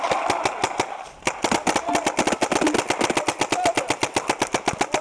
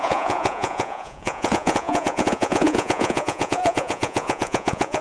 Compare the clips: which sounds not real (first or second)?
second